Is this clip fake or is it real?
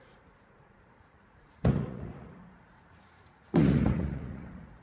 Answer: fake